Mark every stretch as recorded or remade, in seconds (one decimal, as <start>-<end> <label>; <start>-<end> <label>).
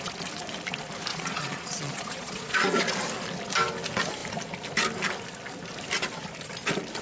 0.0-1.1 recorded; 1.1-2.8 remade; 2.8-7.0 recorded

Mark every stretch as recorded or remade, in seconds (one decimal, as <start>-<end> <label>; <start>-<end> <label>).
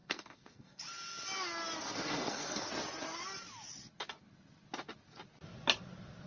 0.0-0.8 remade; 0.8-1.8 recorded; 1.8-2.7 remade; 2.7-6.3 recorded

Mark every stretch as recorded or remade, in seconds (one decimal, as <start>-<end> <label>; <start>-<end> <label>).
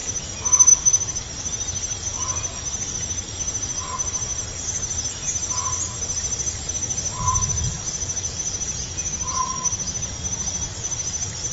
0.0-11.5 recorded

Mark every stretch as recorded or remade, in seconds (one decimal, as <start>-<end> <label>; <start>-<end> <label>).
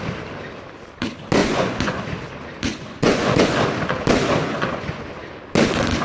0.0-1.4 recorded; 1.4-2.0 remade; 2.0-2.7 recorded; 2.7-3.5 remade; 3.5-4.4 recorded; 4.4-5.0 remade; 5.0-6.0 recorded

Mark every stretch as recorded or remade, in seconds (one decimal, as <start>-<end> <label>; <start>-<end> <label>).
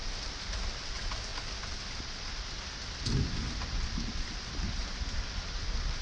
0.0-6.0 recorded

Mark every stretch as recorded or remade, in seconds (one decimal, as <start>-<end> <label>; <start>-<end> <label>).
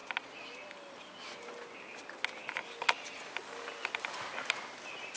0.0-5.2 recorded